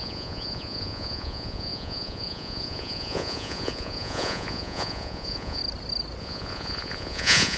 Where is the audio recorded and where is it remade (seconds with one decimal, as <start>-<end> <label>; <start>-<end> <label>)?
0.0-5.6 remade; 5.6-6.2 recorded; 6.2-7.6 remade